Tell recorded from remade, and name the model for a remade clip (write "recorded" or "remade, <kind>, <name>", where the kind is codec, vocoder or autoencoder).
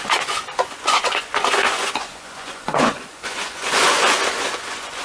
remade, vocoder, Vocos